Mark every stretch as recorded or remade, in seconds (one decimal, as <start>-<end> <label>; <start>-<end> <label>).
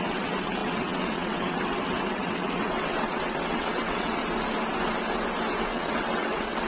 0.0-4.2 remade; 4.2-5.6 recorded; 5.6-6.7 remade